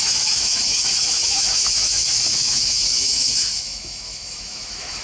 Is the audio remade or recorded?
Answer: remade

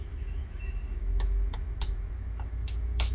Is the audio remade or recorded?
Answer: remade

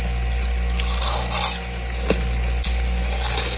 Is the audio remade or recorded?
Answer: recorded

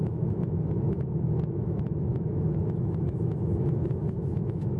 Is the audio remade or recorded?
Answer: remade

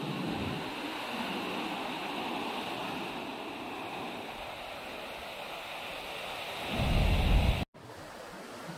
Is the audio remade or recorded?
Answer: recorded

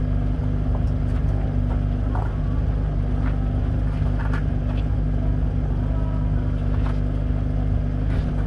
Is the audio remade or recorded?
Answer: recorded